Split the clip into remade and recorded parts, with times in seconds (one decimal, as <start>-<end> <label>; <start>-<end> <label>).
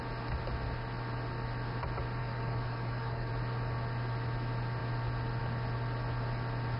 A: 0.0-2.2 recorded; 2.2-3.3 remade; 3.3-6.8 recorded